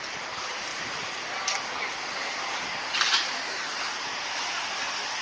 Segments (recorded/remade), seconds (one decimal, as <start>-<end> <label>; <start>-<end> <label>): 0.0-5.2 recorded